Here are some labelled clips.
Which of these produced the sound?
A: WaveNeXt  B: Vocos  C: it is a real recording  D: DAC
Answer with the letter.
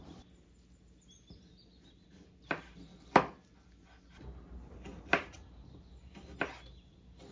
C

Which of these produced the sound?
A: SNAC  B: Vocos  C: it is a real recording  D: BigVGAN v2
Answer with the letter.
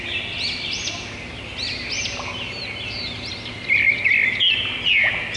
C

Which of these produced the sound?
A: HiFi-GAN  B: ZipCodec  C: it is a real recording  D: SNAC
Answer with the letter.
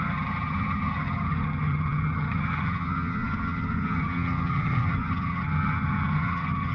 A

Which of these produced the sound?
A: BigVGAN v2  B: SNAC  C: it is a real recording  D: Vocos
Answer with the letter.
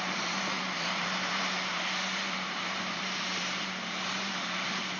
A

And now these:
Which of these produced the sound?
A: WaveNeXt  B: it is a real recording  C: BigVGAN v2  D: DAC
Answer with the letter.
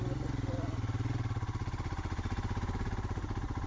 B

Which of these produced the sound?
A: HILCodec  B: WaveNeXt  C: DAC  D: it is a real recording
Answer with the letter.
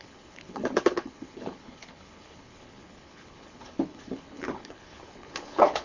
A